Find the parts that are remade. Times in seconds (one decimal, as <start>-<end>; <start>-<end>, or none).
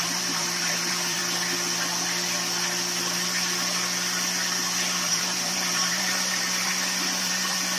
0.0-1.2; 5.0-6.7; 7.2-7.8